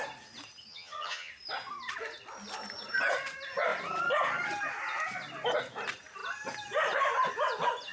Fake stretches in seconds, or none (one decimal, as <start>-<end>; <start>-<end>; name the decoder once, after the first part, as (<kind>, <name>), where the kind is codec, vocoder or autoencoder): 0.7-1.3 (vocoder, HiFi-GAN)